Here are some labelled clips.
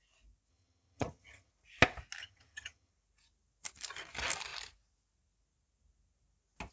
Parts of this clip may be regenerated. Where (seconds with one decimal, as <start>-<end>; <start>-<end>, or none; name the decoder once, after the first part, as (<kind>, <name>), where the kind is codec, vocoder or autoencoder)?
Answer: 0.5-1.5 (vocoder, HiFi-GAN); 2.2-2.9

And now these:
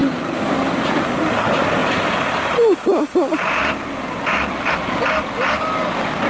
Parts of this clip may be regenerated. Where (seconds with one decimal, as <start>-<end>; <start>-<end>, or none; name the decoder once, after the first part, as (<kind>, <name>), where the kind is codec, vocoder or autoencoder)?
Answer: none

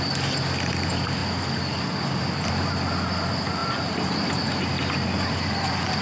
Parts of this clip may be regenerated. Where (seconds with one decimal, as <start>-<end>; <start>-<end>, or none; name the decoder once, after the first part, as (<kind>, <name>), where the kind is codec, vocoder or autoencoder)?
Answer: none

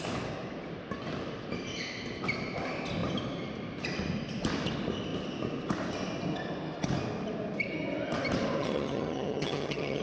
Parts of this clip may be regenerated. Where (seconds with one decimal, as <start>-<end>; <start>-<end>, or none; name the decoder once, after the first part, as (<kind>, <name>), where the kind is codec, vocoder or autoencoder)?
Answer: 8.6-10.0 (vocoder, HiFi-GAN)

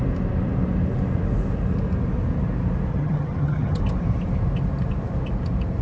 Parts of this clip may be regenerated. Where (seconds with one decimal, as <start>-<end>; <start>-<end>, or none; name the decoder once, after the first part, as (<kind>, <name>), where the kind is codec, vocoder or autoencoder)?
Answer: 2.9-3.8 (vocoder, HiFi-GAN)

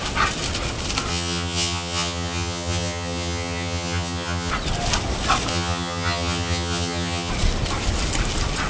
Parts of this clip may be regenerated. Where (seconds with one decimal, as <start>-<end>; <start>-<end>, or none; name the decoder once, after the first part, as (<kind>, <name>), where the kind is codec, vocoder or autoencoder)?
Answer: 1.1-4.5 (vocoder, HiFi-GAN); 5.5-7.3

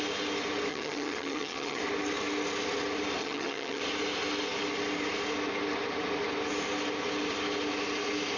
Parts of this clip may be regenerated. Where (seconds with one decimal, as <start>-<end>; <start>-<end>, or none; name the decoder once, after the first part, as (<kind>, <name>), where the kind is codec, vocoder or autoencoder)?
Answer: 0.7-1.8 (vocoder, HiFi-GAN); 3.2-3.8